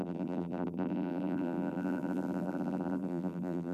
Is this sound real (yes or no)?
no